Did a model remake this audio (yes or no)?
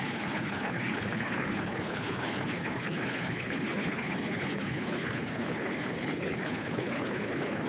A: yes